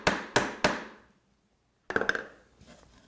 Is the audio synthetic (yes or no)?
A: no